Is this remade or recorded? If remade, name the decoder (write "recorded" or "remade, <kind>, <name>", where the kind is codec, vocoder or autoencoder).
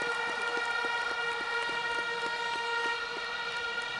recorded